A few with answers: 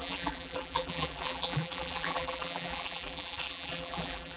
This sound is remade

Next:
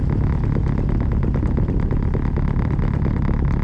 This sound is recorded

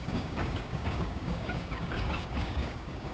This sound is remade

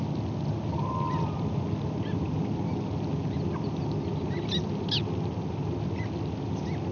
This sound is recorded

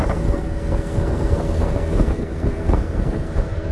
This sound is remade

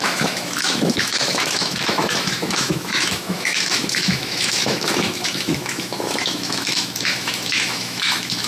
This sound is remade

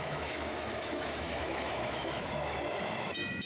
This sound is remade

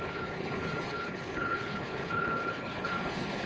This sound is remade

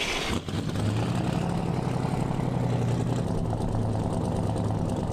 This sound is recorded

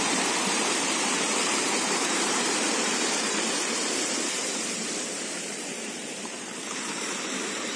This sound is remade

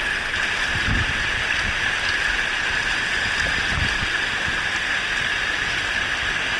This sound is recorded